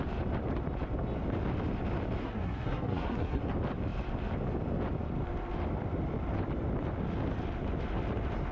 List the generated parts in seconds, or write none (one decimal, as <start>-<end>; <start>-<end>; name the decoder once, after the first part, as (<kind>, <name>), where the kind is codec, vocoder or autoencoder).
2.2-3.4 (codec, SNAC)